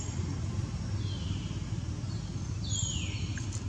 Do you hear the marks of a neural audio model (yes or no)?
no